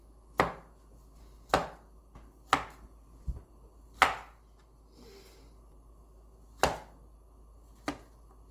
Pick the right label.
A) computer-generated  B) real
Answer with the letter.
B